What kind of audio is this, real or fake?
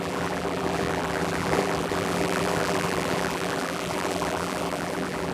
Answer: fake